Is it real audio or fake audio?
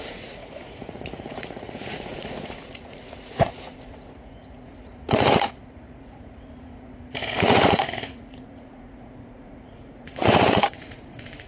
fake